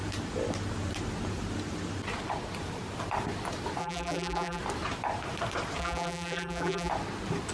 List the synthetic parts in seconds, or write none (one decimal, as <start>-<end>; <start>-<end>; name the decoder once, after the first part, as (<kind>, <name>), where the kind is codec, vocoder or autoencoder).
3.8-4.6 (vocoder, BigVGAN v2); 5.8-6.9